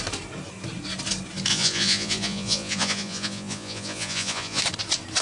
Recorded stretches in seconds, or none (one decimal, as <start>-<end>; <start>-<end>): 0.0-1.5; 4.6-5.2